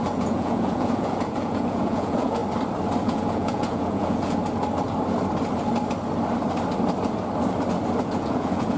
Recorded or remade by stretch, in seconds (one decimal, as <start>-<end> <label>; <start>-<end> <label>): 0.0-2.4 remade; 2.4-3.0 recorded; 3.0-4.4 remade; 4.4-8.0 recorded; 8.0-8.8 remade